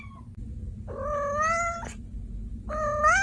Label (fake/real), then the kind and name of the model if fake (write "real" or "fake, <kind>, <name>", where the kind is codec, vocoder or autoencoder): real